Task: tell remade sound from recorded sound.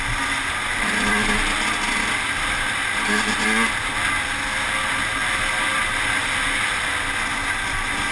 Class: recorded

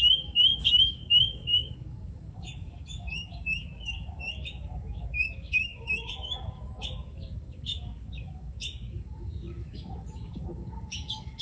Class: remade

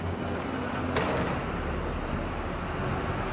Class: recorded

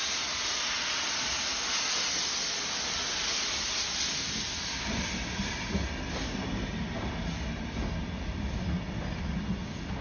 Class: recorded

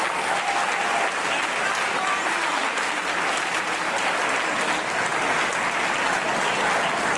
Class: recorded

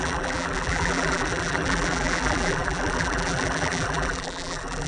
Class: remade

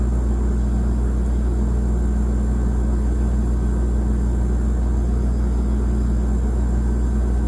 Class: recorded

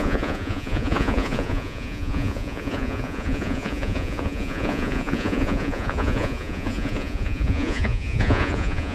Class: remade